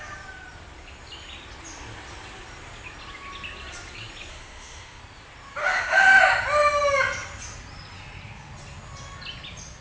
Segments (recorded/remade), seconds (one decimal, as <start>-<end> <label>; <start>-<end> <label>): 0.0-4.3 recorded; 4.3-5.0 remade; 5.0-5.6 recorded; 5.6-6.2 remade; 6.2-9.8 recorded